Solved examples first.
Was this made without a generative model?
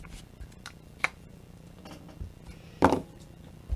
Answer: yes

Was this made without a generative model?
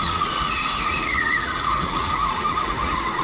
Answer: no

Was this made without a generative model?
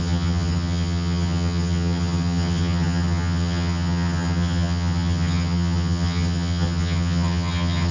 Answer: no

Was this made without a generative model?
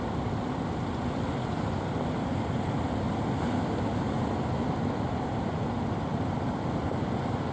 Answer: yes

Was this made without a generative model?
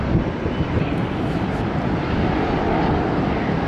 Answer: yes